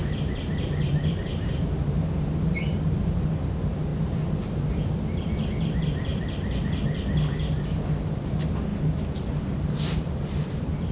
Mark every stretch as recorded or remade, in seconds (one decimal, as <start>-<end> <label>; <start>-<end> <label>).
0.0-6.1 remade; 6.1-6.6 recorded; 6.6-10.9 remade